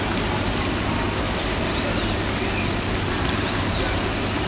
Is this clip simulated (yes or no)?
no